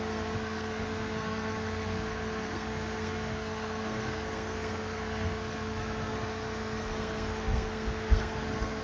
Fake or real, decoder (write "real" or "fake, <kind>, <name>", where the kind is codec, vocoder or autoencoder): fake, codec, SNAC